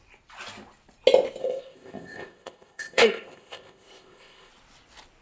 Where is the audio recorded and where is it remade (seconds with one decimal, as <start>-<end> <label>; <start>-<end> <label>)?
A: 0.0-1.4 recorded; 1.4-4.5 remade; 4.5-5.2 recorded